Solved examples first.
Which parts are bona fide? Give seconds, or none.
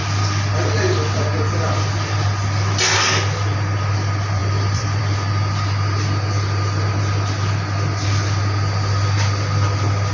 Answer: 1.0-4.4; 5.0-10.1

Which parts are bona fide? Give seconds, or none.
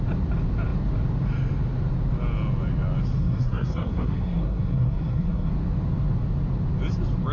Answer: 0.0-3.2; 5.5-7.3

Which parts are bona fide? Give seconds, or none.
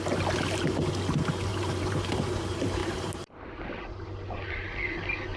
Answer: 0.0-1.5; 2.2-2.8; 4.1-5.4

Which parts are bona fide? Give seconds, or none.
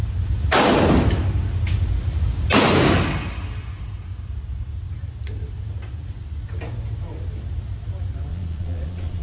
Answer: 0.0-8.3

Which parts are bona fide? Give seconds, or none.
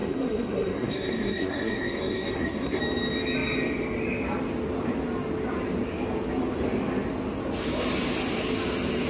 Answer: 2.8-9.1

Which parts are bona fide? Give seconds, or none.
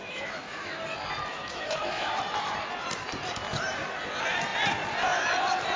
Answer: 0.8-1.3; 2.2-5.8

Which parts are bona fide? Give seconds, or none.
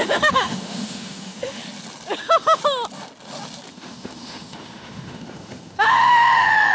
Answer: 1.6-2.2; 2.6-3.7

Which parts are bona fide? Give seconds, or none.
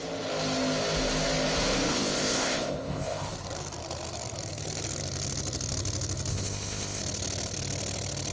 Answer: 0.0-1.9; 3.3-6.3; 7.0-8.3